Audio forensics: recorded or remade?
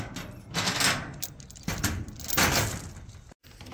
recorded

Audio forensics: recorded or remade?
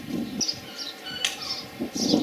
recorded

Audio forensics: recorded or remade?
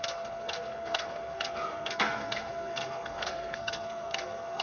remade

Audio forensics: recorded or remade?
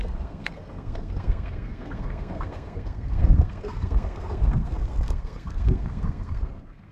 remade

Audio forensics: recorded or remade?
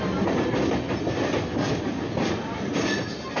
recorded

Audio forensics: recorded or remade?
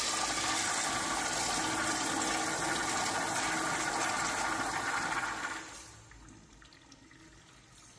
recorded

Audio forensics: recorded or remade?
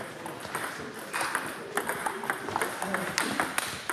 recorded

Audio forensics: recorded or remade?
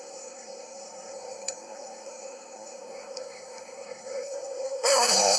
remade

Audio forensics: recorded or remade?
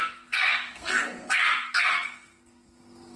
remade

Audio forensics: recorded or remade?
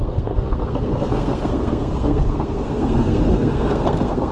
remade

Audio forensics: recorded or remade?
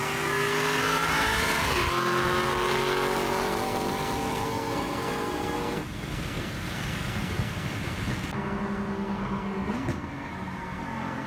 remade